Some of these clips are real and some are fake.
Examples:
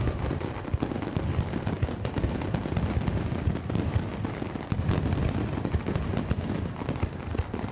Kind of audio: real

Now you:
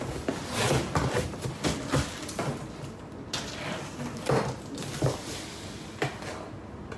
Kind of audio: real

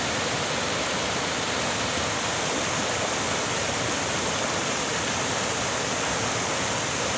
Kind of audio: real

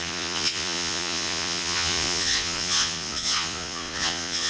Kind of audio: fake